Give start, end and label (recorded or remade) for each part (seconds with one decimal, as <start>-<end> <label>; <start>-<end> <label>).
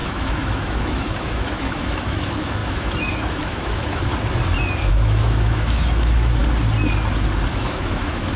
0.0-4.1 remade; 4.1-4.9 recorded; 4.9-6.4 remade; 6.4-7.5 recorded; 7.5-8.4 remade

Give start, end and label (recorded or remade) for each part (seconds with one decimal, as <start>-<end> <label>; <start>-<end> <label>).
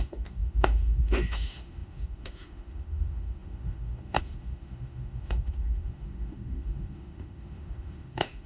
0.0-8.5 remade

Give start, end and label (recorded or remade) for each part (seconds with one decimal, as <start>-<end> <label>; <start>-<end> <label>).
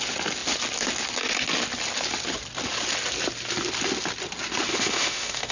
0.0-4.7 recorded; 4.7-5.5 remade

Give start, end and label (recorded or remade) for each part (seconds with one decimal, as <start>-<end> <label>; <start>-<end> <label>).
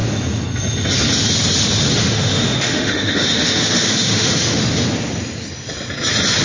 0.0-2.0 recorded; 2.0-4.6 remade; 4.6-6.4 recorded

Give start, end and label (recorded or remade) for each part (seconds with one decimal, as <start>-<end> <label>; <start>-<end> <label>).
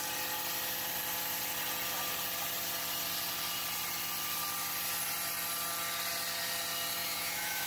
0.0-7.0 recorded; 7.0-7.7 remade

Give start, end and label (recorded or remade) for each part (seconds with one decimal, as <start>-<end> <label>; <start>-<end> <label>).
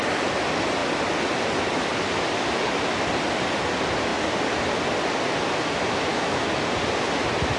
0.0-6.1 recorded; 6.1-6.6 remade; 6.6-7.6 recorded